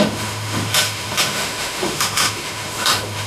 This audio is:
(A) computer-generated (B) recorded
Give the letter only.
A